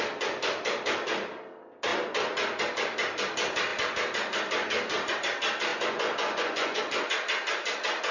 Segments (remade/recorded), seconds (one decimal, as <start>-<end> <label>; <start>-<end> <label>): 0.0-5.7 recorded; 5.7-6.8 remade; 6.8-8.1 recorded

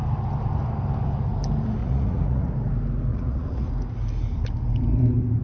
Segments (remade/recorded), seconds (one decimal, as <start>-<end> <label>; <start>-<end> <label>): 0.0-1.8 recorded; 1.8-2.5 remade; 2.5-3.1 recorded; 3.1-3.7 remade; 3.7-5.4 recorded

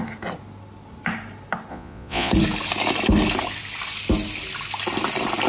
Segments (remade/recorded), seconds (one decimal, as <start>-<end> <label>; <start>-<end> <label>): 0.0-1.7 recorded; 1.7-2.3 remade; 2.3-5.5 recorded

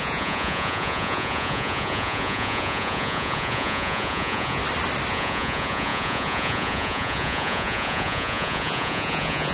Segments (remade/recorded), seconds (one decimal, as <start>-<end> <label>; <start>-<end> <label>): 0.0-4.6 remade; 4.6-5.1 recorded; 5.1-9.5 remade

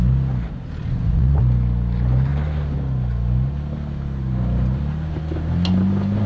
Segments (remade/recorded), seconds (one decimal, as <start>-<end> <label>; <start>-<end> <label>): 0.0-0.8 recorded; 0.8-1.4 remade; 1.4-6.3 recorded

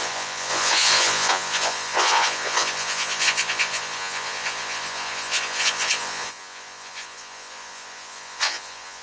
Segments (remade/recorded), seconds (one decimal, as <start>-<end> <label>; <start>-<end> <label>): 0.0-9.0 remade

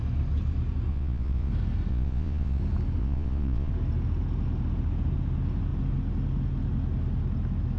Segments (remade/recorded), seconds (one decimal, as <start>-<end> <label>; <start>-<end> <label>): 0.0-0.9 recorded; 0.9-1.5 remade; 1.5-1.9 recorded; 1.9-2.6 remade; 2.6-3.0 recorded; 3.0-3.7 remade; 3.7-7.8 recorded

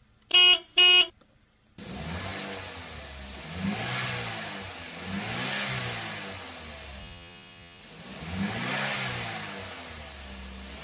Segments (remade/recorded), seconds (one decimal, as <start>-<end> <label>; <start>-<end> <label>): 0.0-7.0 recorded; 7.0-7.8 remade; 7.8-10.8 recorded